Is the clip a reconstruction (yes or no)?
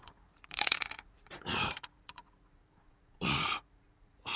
yes